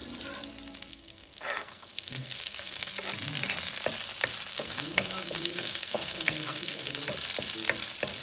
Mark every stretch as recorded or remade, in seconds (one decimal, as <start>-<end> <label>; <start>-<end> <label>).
0.0-0.9 recorded; 0.9-2.9 remade; 2.9-4.5 recorded; 4.5-7.0 remade; 7.0-8.2 recorded